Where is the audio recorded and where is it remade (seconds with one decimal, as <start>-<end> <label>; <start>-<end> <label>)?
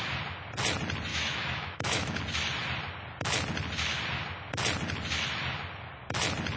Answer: 0.0-1.1 recorded; 1.1-2.2 remade; 2.2-6.6 recorded